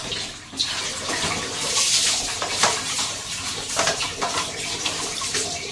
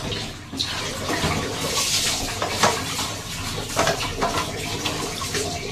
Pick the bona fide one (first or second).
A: second